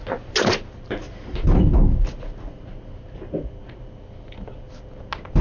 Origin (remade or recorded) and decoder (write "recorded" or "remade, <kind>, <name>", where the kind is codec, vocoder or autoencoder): recorded